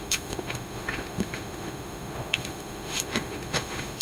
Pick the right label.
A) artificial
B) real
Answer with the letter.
A